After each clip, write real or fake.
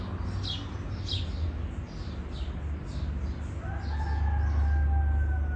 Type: real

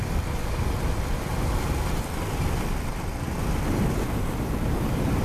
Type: fake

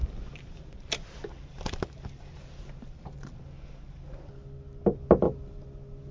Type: real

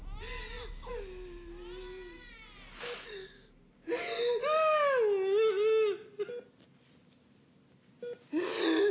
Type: real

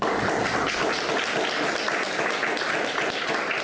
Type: real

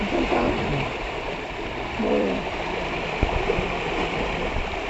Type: fake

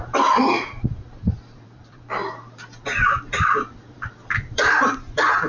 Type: fake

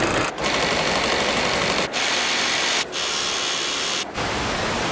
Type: fake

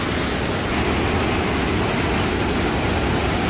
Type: real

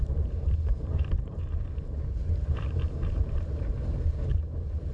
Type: fake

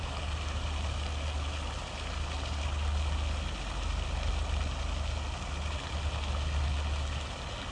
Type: real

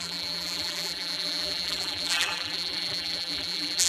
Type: fake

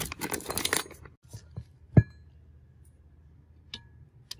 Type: real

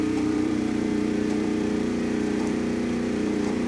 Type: fake